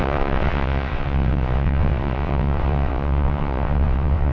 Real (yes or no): no